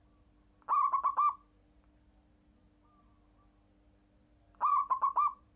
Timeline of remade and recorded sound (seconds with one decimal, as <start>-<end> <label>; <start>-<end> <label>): 0.0-4.7 recorded; 4.7-5.6 remade